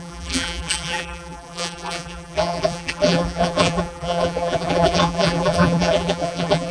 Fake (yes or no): yes